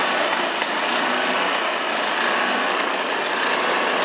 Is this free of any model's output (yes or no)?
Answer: yes